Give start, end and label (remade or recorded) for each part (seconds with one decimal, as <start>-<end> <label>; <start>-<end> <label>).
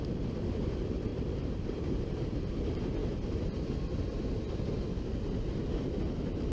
0.0-1.1 recorded; 1.1-2.3 remade; 2.3-6.5 recorded